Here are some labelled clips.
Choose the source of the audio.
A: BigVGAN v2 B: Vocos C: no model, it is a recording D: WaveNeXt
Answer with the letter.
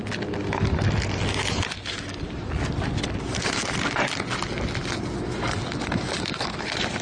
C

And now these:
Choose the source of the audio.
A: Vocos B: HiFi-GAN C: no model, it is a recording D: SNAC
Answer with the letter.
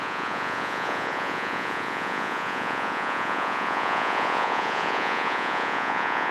A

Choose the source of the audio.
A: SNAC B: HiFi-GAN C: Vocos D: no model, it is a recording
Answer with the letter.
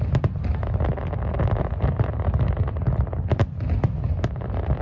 D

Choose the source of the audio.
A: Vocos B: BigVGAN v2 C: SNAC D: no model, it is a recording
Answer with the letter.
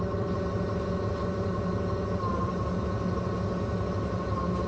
D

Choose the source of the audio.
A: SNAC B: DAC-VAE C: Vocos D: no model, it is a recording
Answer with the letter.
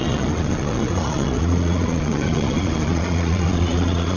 C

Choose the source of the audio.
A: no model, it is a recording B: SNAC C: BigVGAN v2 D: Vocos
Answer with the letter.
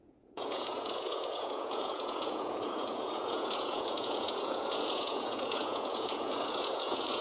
D